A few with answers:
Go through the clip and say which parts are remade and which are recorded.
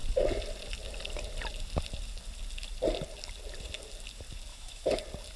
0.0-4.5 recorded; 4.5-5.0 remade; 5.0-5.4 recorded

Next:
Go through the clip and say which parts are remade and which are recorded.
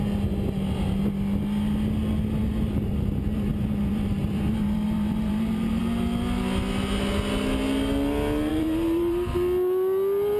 0.0-2.4 recorded; 2.4-2.9 remade; 2.9-3.5 recorded; 3.5-5.8 remade; 5.8-8.5 recorded; 8.5-9.3 remade; 9.3-10.4 recorded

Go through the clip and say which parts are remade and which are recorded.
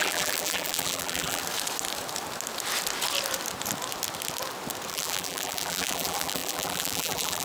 0.0-1.4 remade; 1.4-4.9 recorded; 4.9-7.4 remade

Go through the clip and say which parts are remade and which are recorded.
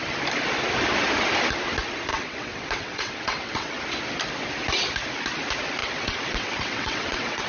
0.0-2.1 recorded; 2.1-3.8 remade; 3.8-5.8 recorded; 5.8-7.5 remade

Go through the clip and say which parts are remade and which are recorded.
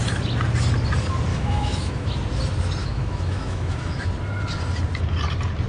0.0-1.3 recorded; 1.3-2.1 remade; 2.1-2.8 recorded; 2.8-4.1 remade; 4.1-5.7 recorded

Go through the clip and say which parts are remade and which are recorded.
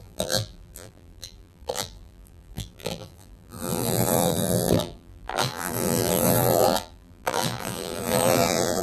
0.0-8.8 remade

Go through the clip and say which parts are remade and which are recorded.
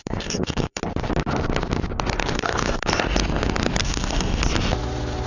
0.0-0.8 remade; 0.8-2.2 recorded; 2.2-2.9 remade; 2.9-3.8 recorded; 3.8-4.4 remade; 4.4-5.3 recorded